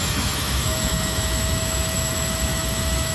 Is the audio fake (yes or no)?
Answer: yes